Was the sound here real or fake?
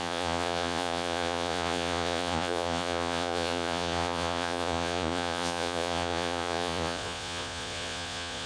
fake